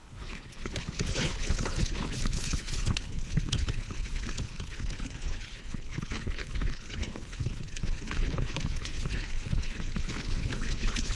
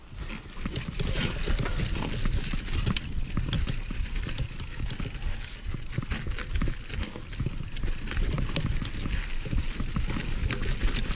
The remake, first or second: first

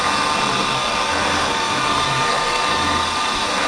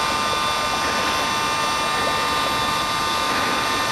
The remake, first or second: first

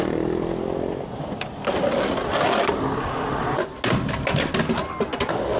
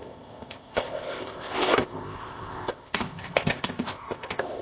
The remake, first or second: second